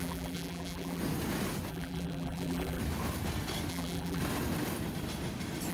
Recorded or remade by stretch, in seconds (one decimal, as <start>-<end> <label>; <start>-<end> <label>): 0.0-1.0 remade; 1.0-1.7 recorded; 1.7-2.8 remade; 2.8-3.7 recorded; 3.7-4.2 remade; 4.2-5.7 recorded